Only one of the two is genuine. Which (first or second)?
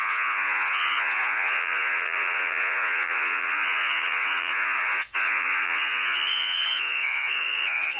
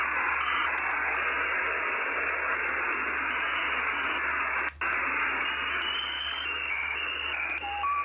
second